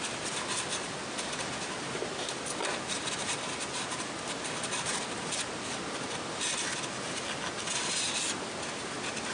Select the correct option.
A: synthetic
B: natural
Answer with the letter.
B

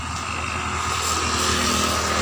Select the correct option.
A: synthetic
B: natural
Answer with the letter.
B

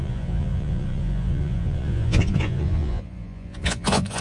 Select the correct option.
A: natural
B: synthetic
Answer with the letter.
B